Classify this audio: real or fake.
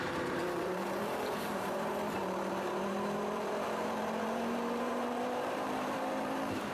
fake